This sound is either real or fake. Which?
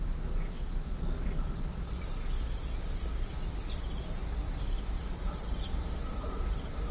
real